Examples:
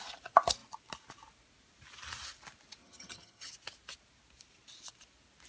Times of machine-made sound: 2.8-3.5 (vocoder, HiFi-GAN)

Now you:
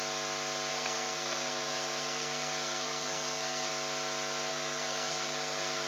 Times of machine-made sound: 0.7-3.7 (codec, SNAC); 4.5-5.9

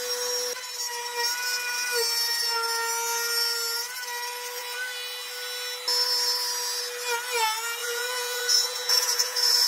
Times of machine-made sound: 7.8-9.7 (vocoder, Vocos)

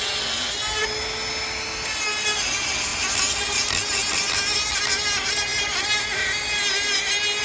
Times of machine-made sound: none

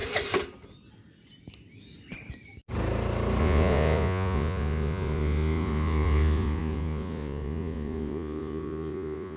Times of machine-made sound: 3.4-9.4 (vocoder, Vocos)

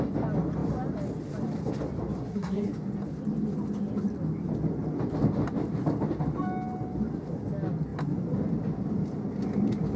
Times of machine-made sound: 2.2-2.7 (codec, SNAC)

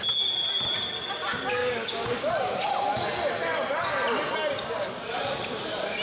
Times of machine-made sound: 1.6-2.3 (codec, DAC)